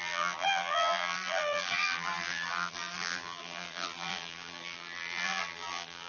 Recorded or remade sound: remade